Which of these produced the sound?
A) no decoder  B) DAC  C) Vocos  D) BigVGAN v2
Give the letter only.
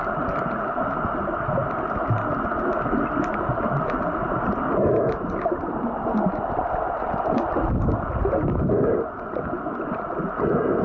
A